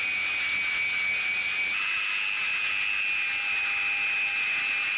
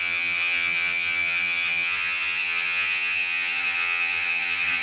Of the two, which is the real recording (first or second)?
first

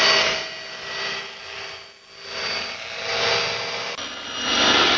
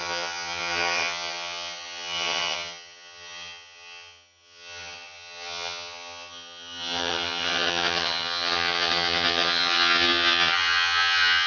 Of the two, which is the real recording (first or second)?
first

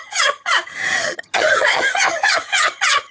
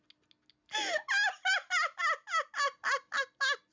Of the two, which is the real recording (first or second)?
second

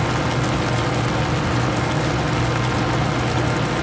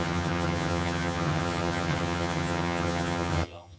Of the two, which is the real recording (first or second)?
first